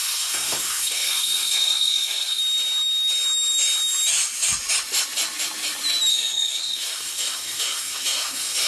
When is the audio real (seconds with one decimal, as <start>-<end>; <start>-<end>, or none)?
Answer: 2.4-6.1